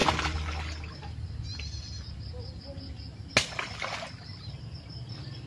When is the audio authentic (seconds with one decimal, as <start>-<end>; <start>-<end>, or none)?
0.0-5.5